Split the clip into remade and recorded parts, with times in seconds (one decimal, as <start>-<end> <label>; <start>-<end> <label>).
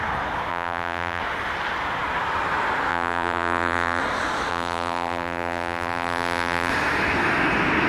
0.0-0.5 recorded; 0.5-1.2 remade; 1.2-2.9 recorded; 2.9-4.0 remade; 4.0-4.5 recorded; 4.5-6.7 remade; 6.7-7.9 recorded